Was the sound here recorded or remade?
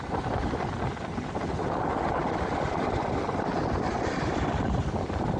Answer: recorded